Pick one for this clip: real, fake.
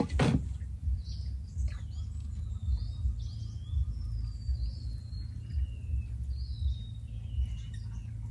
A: real